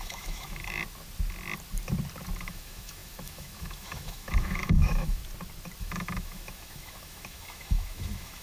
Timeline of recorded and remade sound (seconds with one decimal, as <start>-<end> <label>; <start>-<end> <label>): 0.0-0.8 remade; 0.8-2.4 recorded; 2.4-5.2 remade; 5.2-5.8 recorded; 5.8-8.4 remade